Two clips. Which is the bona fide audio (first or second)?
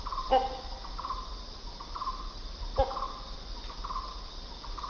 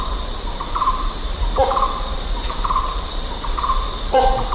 first